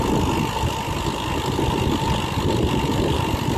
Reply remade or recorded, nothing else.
recorded